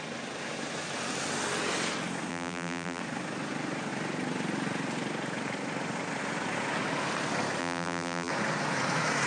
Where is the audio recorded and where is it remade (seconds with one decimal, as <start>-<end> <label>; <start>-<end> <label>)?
0.0-2.3 recorded; 2.3-3.0 remade; 3.0-7.6 recorded; 7.6-8.3 remade; 8.3-9.3 recorded